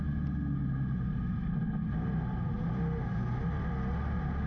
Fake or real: real